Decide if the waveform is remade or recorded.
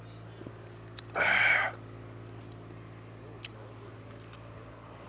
recorded